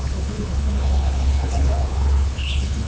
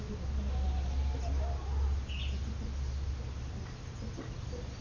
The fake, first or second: first